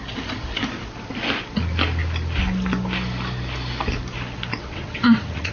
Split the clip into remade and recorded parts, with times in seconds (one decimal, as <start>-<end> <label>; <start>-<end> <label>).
0.0-4.5 recorded; 4.5-5.5 remade